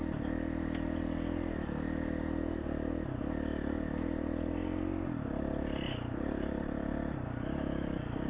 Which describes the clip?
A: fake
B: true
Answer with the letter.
B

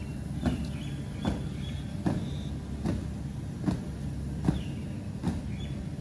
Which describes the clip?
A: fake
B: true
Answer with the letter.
B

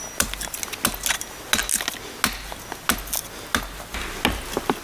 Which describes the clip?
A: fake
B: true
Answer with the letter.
B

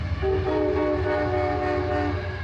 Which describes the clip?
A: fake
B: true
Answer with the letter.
B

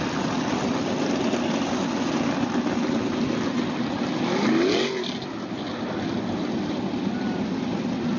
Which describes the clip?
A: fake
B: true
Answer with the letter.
B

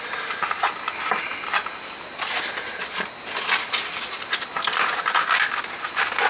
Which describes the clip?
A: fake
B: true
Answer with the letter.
B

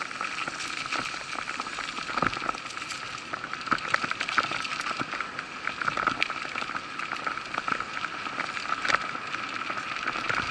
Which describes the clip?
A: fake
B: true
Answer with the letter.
B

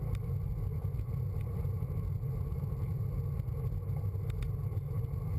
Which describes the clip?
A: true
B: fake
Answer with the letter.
A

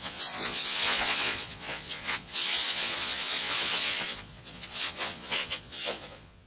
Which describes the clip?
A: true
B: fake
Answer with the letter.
B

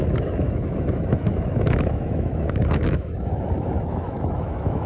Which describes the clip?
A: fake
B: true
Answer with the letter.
A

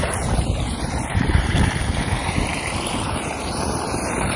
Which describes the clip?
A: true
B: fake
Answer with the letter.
B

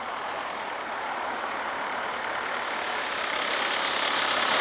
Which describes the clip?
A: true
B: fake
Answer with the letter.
B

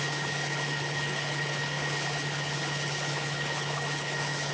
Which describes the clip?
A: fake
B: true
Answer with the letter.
A